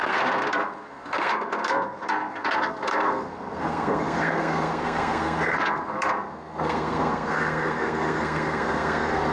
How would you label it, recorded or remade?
remade